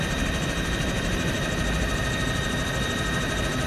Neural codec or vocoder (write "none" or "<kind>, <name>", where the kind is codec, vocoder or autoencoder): none